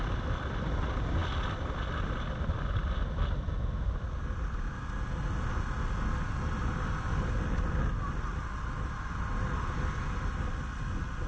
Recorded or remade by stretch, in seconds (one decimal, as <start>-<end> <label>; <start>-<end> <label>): 0.0-11.3 recorded